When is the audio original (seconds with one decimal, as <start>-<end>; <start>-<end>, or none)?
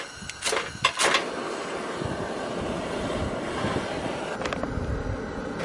0.0-5.6